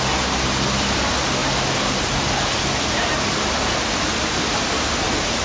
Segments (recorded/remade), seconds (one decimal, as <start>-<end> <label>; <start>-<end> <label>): 0.0-5.4 recorded